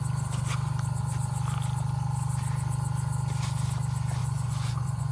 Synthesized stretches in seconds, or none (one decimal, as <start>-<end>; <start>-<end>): 4.2-5.1